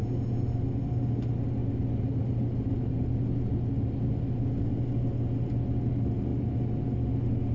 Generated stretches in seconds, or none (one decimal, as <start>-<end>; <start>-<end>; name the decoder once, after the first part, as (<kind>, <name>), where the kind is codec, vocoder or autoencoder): none